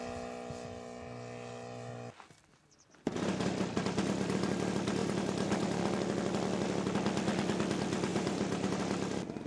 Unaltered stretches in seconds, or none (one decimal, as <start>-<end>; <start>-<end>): 0.0-5.0; 5.8-8.1; 8.8-9.5